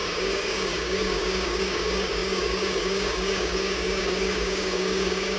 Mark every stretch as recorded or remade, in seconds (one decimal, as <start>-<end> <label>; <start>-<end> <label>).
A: 0.0-5.4 remade